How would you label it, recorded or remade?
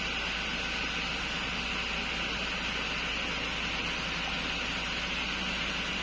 recorded